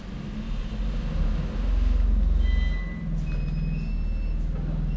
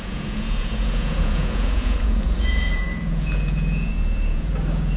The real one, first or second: first